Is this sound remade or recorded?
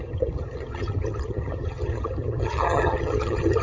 remade